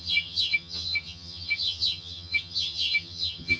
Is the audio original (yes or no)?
no